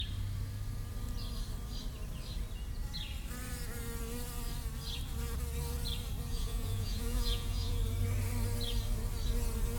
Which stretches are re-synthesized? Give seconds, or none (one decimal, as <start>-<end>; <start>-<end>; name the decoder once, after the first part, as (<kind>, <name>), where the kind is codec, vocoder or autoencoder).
6.3-7.8 (vocoder, Vocos)